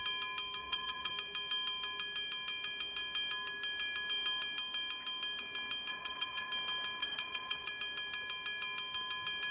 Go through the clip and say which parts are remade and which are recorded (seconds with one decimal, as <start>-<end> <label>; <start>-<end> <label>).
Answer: 0.0-0.6 recorded; 0.6-1.1 remade; 1.1-5.9 recorded; 5.9-6.5 remade; 6.5-7.0 recorded; 7.0-7.7 remade; 7.7-9.5 recorded